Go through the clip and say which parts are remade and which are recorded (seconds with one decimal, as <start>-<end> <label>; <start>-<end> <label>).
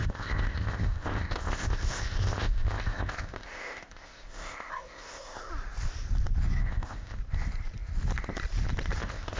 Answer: 0.0-5.5 remade; 5.5-6.6 recorded; 6.6-7.2 remade; 7.2-9.0 recorded; 9.0-9.4 remade